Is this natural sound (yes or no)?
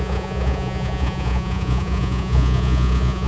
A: no